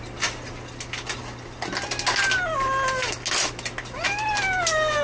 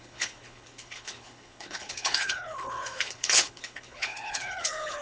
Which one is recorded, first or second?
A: first